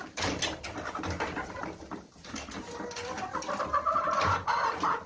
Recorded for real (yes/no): yes